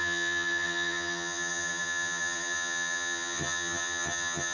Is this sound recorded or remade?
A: remade